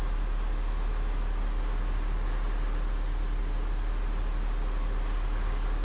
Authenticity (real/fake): real